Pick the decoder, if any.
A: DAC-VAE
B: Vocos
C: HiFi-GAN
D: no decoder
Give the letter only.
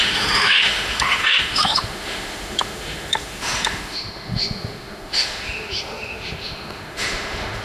A